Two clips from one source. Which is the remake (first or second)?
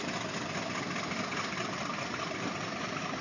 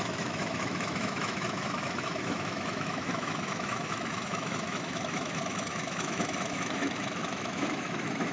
second